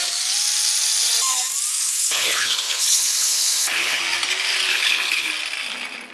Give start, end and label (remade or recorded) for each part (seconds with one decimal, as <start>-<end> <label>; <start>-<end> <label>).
0.0-1.7 recorded; 1.7-4.0 remade; 4.0-4.7 recorded; 4.7-5.3 remade; 5.3-6.1 recorded